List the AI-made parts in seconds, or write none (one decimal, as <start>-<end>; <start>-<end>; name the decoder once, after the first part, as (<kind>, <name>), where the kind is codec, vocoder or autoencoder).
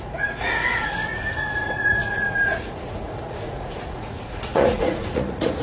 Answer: 0.0-5.6 (vocoder, Vocos)